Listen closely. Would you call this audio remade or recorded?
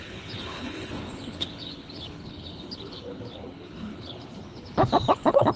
remade